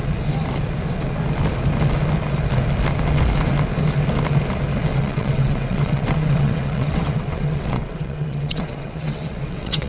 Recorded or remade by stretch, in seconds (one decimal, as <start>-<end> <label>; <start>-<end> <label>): 0.0-4.9 recorded; 4.9-9.9 remade